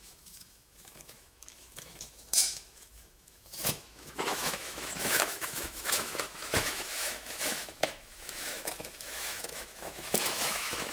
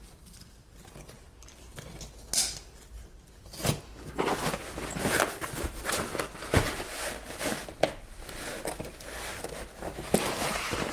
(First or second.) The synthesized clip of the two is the first